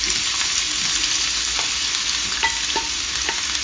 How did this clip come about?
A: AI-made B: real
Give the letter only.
B